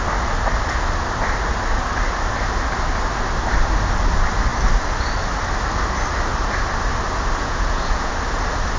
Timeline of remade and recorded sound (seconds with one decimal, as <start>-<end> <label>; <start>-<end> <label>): 0.0-7.4 recorded; 7.4-8.1 remade; 8.1-8.8 recorded